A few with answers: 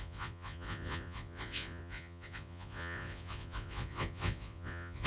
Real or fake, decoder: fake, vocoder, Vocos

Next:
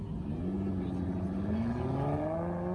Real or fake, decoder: real